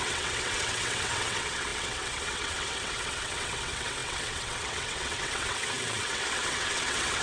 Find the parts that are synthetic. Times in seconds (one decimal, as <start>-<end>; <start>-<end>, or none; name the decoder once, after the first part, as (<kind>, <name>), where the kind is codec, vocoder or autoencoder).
0.0-7.2 (vocoder, WaveNeXt)